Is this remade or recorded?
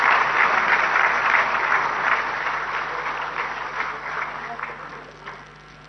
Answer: recorded